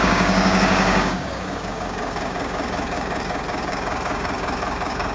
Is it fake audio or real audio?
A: fake